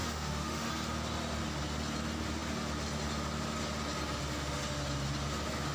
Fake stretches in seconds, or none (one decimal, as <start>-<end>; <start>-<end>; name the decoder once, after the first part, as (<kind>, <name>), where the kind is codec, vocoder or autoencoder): 0.0-0.7 (autoencoder, DAC-VAE)